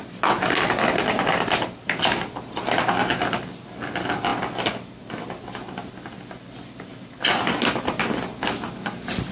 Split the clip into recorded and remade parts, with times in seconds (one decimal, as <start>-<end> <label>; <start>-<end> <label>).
0.0-9.3 recorded